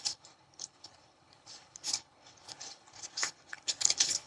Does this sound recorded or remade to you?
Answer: remade